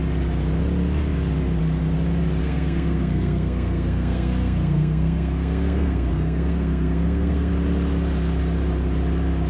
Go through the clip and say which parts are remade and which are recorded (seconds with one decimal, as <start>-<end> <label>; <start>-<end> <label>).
0.0-2.4 recorded; 2.4-7.5 remade; 7.5-9.5 recorded